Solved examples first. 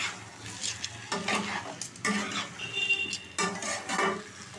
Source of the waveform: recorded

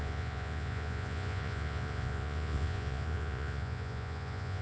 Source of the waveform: remade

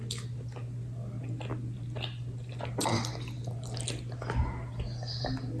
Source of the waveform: recorded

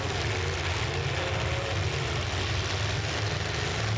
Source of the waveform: recorded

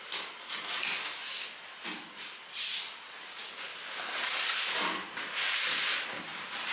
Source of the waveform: recorded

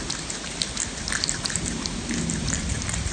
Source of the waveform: recorded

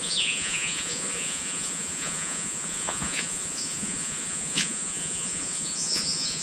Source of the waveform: remade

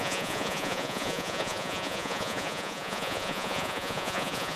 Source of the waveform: remade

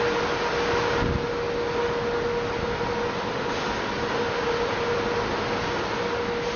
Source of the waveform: recorded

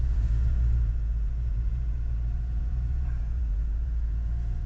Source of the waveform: remade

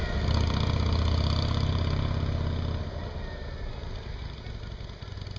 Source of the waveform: recorded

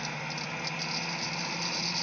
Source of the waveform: recorded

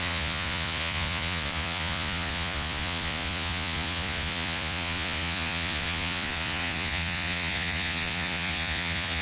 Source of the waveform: remade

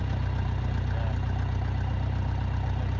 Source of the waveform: recorded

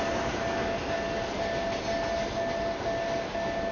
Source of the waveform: recorded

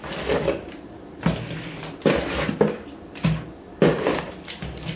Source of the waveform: recorded